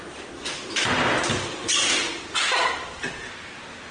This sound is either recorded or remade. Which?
recorded